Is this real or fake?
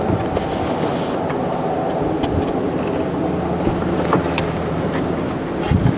real